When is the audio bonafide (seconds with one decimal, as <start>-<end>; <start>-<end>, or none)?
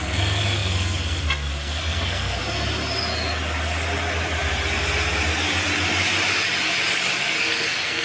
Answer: 2.4-7.2